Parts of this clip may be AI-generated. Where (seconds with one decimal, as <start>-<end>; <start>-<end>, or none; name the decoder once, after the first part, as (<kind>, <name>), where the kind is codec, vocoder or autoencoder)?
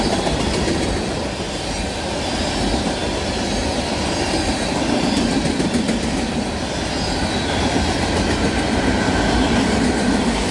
none